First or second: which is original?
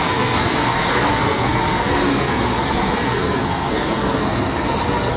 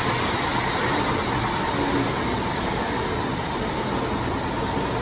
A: second